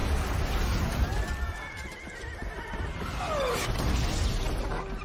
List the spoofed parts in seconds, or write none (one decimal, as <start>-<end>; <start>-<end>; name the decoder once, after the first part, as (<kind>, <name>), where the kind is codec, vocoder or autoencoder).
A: none